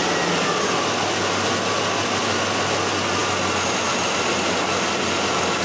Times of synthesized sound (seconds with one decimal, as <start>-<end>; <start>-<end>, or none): none